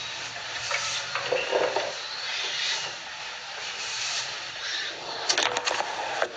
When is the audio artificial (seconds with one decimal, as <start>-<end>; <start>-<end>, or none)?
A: none